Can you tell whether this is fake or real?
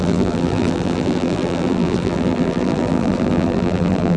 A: fake